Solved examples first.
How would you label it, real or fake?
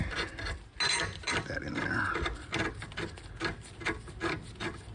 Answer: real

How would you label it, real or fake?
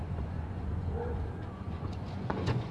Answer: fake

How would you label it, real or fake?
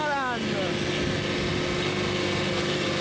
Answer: real